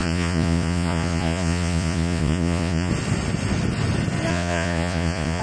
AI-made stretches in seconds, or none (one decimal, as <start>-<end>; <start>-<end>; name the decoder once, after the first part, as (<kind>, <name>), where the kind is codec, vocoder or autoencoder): 0.0-2.9 (vocoder, Vocos); 4.3-5.4